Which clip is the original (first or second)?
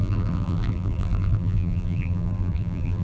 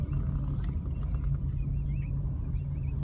second